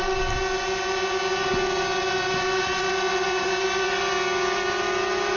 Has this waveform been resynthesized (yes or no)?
no